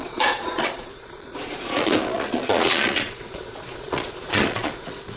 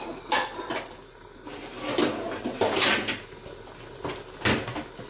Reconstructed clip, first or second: first